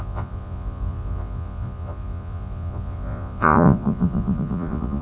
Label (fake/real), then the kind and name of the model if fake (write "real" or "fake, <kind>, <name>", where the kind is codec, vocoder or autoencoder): fake, vocoder, Vocos